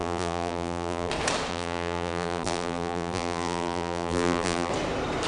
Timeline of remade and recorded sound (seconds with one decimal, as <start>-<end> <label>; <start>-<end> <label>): 0.0-1.1 remade; 1.1-1.5 recorded; 1.5-4.7 remade; 4.7-5.3 recorded

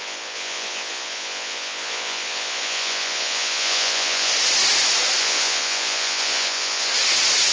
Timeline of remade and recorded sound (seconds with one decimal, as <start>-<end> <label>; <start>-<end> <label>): 0.0-4.3 remade; 4.3-5.2 recorded; 5.2-6.9 remade; 6.9-7.5 recorded

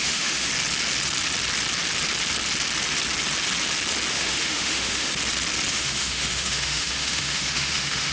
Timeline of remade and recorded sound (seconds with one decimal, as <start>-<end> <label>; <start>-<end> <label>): 0.0-0.5 remade; 0.5-4.1 recorded; 4.1-5.1 remade; 5.1-5.7 recorded; 5.7-8.1 remade

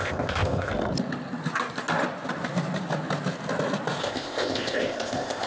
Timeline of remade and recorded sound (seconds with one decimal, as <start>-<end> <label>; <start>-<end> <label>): 0.0-0.7 remade; 0.7-4.0 recorded; 4.0-5.5 remade